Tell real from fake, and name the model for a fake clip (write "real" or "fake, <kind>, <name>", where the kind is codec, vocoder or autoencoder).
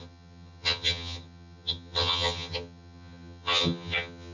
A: fake, vocoder, HiFi-GAN